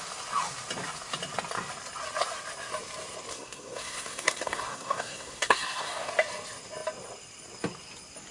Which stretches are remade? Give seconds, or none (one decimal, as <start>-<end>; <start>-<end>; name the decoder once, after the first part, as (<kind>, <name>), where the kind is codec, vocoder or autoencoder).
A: 3.3-6.1 (codec, SNAC)